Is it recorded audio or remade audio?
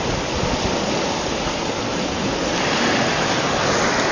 recorded